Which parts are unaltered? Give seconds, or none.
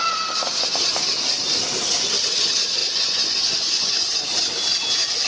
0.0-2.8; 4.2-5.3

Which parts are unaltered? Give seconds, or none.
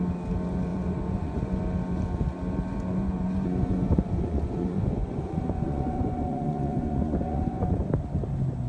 0.0-0.7; 1.6-2.7; 7.8-8.7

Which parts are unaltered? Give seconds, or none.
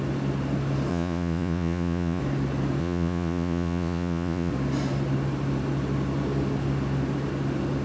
0.0-0.9; 2.2-2.8; 4.5-7.8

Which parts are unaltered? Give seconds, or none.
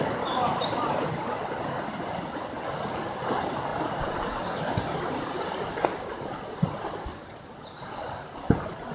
0.0-8.9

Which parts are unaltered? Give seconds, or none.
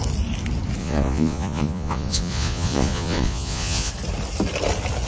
0.0-0.8; 3.9-5.1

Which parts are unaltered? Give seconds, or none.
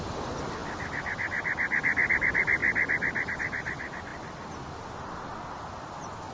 0.0-6.3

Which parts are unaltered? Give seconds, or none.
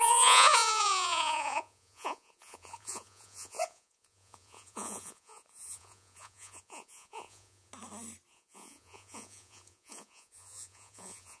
7.7-8.3